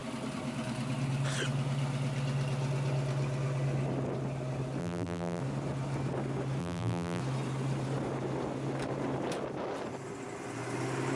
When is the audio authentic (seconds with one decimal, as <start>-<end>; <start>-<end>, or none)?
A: 0.0-4.8; 5.4-6.6; 7.2-11.2